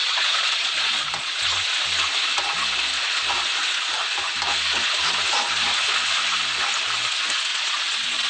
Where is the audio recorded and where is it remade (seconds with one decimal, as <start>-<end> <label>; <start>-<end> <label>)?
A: 0.0-1.6 remade; 1.6-7.5 recorded; 7.5-8.3 remade